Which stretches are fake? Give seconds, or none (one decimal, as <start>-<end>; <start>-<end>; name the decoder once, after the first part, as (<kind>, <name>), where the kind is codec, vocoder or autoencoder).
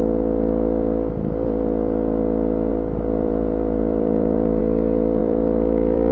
2.7-4.6 (vocoder, BigVGAN v2); 5.2-6.1